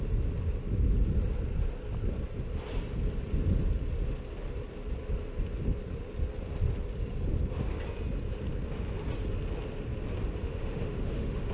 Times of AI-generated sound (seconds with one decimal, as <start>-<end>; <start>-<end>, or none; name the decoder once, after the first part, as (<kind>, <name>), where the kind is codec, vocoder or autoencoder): 10.4-11.5 (autoencoder, DAC-VAE)